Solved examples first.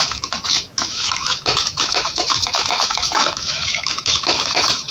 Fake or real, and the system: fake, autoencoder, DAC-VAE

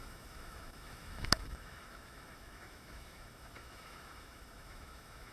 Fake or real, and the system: fake, autoencoder, DAC-VAE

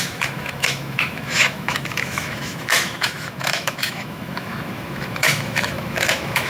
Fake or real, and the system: fake, autoencoder, DAC-VAE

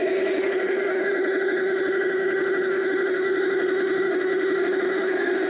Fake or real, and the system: fake, autoencoder, DAC-VAE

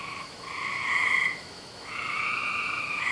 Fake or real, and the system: fake, autoencoder, DAC-VAE